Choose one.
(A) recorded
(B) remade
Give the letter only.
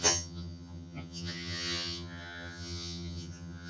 B